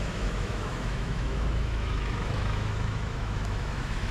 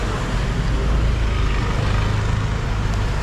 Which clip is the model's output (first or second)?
first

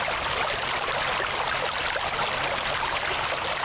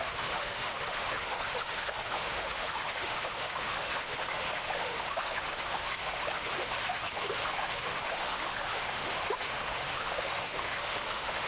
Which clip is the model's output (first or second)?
second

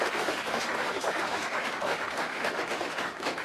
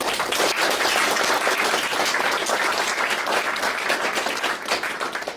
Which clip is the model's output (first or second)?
first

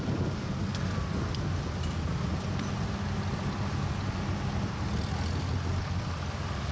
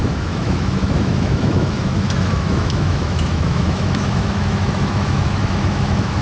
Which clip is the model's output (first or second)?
second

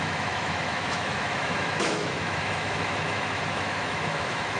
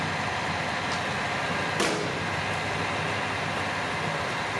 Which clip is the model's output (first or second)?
first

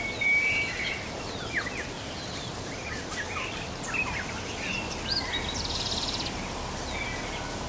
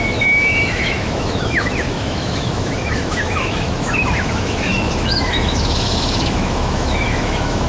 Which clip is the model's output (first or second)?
second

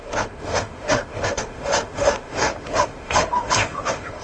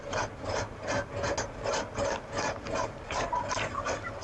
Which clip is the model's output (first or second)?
first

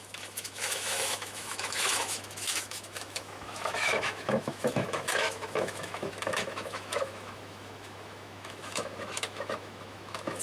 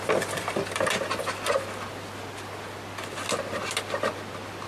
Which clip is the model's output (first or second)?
first